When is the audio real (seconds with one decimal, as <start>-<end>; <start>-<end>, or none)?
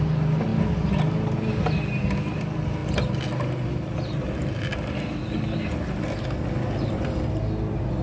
0.0-2.8; 3.3-8.0